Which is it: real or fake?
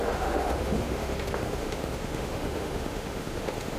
fake